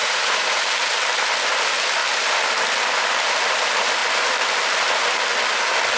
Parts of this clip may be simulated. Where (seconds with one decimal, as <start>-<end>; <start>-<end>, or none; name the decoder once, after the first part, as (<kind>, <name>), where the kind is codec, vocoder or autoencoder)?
0.0-0.6 (vocoder, Vocos)